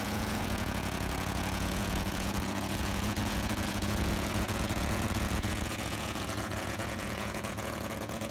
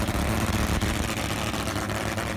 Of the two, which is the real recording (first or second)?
second